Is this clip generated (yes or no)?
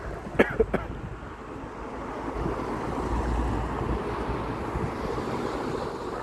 no